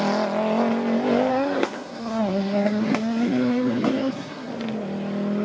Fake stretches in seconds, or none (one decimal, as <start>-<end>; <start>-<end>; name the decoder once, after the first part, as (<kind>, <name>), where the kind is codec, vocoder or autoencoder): 1.3-4.5 (codec, SNAC)